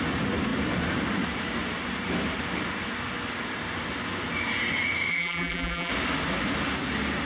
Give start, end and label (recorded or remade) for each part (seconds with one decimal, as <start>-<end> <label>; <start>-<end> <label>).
0.0-5.1 recorded; 5.1-5.9 remade; 5.9-7.3 recorded

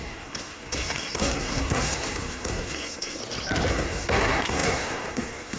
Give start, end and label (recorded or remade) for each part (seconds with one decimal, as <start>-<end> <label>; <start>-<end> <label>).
0.0-3.2 remade; 3.2-3.7 recorded; 3.7-5.6 remade